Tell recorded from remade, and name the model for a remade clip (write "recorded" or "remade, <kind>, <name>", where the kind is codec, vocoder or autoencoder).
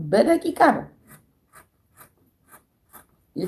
recorded